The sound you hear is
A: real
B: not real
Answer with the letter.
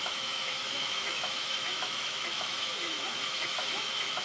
B